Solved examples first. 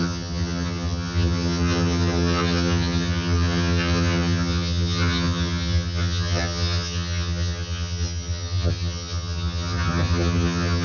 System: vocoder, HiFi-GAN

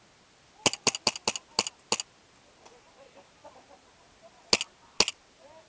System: none